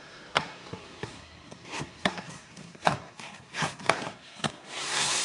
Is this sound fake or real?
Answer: fake